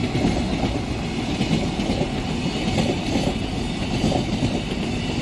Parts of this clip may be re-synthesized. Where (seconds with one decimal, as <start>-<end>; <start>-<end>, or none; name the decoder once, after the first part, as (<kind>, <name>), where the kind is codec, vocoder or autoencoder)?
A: none